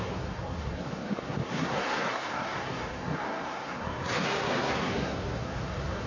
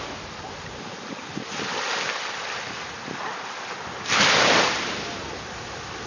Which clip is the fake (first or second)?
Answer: first